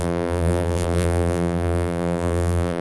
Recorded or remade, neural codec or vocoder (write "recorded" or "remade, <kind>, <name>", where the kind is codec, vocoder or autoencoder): remade, vocoder, BigVGAN v2